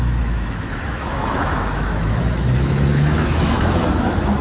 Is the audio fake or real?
fake